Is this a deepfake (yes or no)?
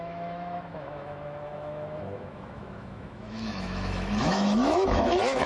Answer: yes